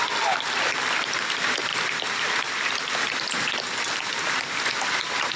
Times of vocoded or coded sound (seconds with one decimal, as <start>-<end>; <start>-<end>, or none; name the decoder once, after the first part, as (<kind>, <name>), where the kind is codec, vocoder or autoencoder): 1.7-2.7 (vocoder, BigVGAN v2)

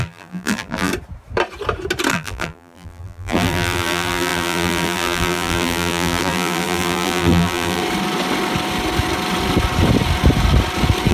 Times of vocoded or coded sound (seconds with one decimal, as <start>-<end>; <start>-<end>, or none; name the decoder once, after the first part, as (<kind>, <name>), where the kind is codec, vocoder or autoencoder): 0.0-0.9 (vocoder, BigVGAN v2); 2.1-7.8

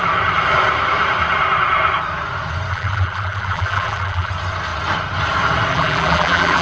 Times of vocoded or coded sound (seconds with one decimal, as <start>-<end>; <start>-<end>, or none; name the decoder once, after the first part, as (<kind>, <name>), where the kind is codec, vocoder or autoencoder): 2.7-4.3 (vocoder, BigVGAN v2); 5.7-6.6

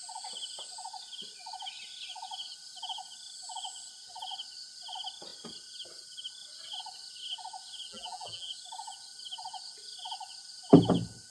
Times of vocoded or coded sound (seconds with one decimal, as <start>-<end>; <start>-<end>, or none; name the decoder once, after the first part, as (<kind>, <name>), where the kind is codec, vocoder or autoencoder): 7.9-8.5 (vocoder, BigVGAN v2)

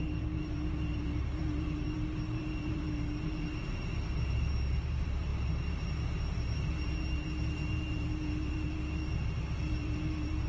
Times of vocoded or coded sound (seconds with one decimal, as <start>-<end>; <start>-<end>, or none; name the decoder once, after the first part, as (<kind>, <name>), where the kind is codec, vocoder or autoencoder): 0.0-10.5 (vocoder, BigVGAN v2)